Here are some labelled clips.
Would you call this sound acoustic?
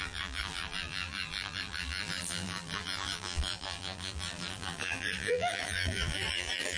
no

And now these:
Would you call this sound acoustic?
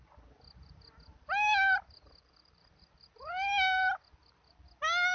yes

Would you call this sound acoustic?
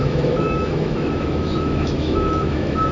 no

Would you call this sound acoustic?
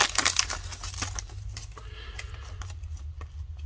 yes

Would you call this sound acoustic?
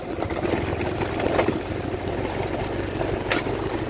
yes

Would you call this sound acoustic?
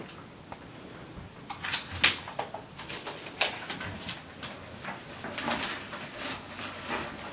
yes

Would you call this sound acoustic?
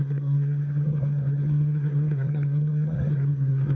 no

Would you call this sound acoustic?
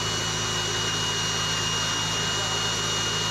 yes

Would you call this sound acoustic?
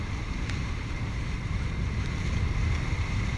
no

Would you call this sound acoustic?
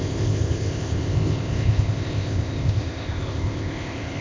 no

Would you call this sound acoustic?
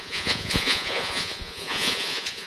no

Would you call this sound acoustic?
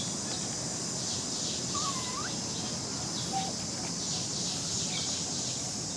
yes